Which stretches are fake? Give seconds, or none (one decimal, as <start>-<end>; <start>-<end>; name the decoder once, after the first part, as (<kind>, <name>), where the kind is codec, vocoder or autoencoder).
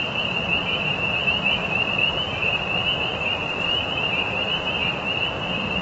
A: 0.6-1.9 (vocoder, BigVGAN v2); 3.1-5.0